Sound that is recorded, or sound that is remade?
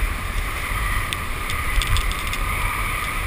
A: remade